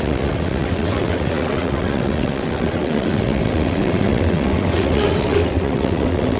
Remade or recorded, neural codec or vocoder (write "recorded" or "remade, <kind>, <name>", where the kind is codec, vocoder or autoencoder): remade, vocoder, WaveNeXt